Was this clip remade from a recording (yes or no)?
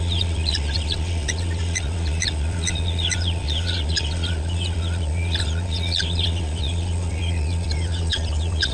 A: yes